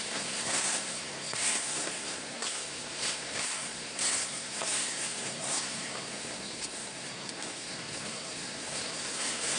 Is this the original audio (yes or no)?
no